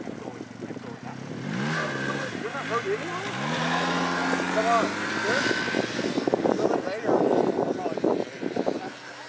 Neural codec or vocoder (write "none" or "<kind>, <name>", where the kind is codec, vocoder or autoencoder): none